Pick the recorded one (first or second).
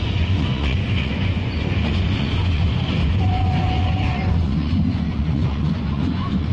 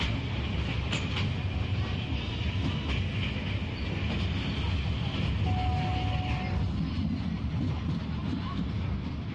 second